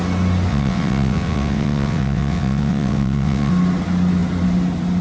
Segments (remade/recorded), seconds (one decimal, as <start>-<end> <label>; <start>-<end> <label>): 0.0-0.5 recorded; 0.5-3.5 remade; 3.5-5.0 recorded